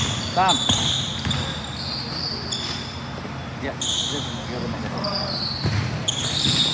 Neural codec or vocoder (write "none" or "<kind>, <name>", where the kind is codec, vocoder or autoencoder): none